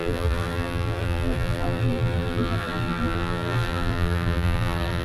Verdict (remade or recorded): remade